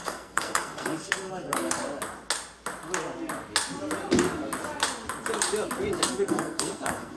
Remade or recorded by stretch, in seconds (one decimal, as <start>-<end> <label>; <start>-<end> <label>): 0.0-1.8 remade; 1.8-6.1 recorded; 6.1-7.2 remade